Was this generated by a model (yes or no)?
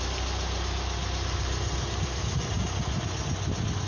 no